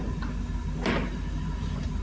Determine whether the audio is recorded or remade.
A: recorded